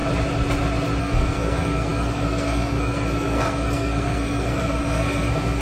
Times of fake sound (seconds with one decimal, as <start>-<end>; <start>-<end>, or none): 1.0-5.6

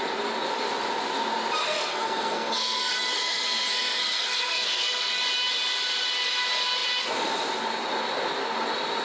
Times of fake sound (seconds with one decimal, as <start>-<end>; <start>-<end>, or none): 1.6-5.2

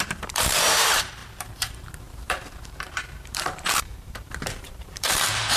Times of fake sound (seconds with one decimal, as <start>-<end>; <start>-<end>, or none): 0.0-5.6

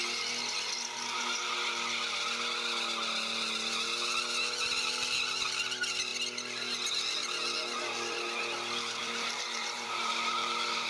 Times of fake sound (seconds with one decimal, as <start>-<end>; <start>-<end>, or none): 9.0-10.9

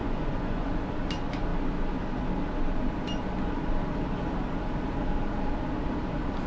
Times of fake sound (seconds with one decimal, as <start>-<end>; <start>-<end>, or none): 0.0-0.7

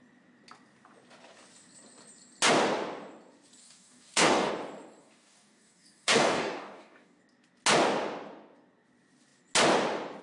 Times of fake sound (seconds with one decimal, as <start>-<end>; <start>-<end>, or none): 3.6-4.5; 5.0-7.2